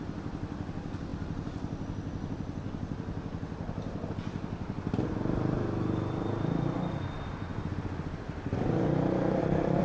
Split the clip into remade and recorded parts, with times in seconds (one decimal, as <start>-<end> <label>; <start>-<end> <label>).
0.0-9.8 recorded